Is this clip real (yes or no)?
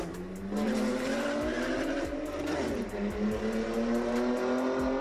yes